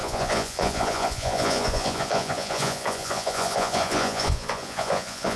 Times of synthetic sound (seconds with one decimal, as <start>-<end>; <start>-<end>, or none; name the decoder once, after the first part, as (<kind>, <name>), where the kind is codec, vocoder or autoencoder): 0.0-5.4 (vocoder, Vocos)